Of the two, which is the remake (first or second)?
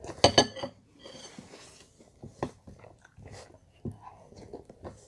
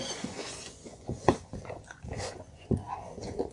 second